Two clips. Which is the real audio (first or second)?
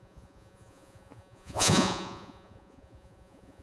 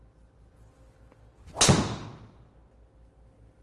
second